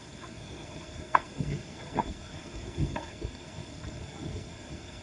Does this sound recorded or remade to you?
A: remade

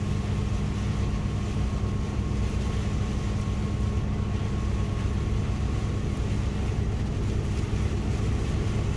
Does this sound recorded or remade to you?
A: recorded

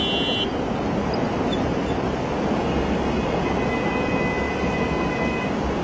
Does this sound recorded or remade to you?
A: recorded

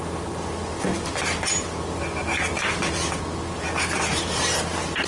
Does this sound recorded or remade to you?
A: recorded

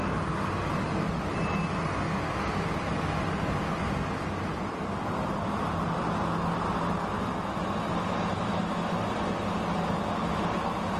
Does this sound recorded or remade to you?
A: recorded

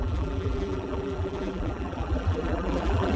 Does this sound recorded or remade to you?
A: remade